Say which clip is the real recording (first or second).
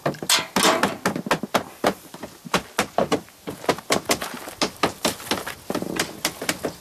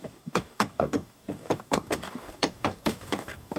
first